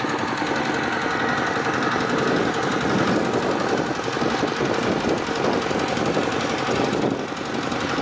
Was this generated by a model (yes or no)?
no